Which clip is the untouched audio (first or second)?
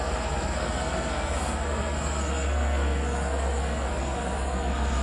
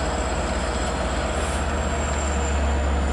second